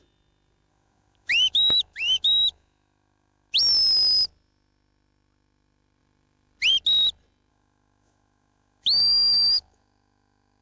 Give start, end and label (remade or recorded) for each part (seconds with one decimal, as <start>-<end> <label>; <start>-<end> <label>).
0.0-0.7 recorded; 0.7-3.6 remade; 3.6-7.5 recorded; 7.5-10.6 remade